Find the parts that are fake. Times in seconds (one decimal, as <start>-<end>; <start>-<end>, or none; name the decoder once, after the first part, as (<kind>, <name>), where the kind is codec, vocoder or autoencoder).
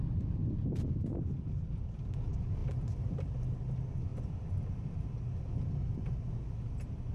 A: none